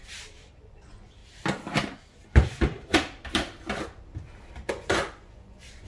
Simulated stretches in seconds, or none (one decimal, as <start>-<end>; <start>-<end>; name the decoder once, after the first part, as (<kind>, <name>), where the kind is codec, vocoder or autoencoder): 0.6-1.2 (vocoder, Vocos); 4.7-5.9